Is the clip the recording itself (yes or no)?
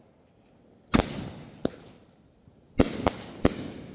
yes